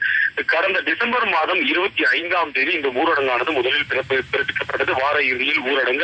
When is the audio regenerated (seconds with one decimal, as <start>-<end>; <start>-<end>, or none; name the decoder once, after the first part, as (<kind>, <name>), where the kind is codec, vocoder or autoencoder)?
0.5-3.0 (vocoder, Vocos)